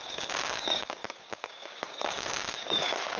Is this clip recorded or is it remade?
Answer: remade